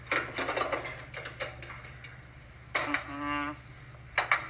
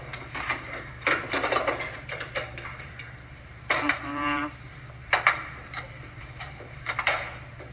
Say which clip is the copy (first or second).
second